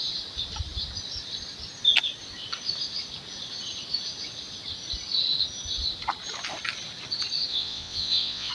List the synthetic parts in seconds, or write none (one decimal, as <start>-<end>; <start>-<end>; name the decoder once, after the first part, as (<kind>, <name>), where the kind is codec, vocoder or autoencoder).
7.5-8.5 (vocoder, WaveNeXt)

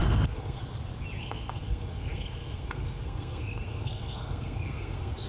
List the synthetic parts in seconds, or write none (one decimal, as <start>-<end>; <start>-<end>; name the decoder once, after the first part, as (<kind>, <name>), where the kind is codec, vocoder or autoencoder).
0.0-0.6 (codec, SNAC); 1.2-5.3

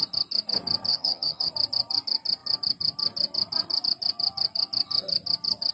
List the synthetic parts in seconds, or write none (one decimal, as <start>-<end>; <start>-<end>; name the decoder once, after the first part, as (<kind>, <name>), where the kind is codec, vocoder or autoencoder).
0.9-1.5 (vocoder, HiFi-GAN)